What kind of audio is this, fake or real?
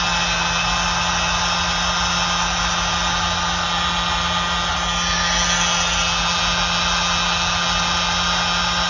real